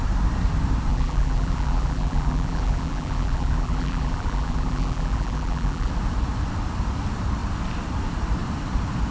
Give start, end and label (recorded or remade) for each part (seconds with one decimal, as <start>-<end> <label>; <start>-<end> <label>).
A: 0.0-0.9 recorded; 0.9-5.9 remade; 5.9-9.1 recorded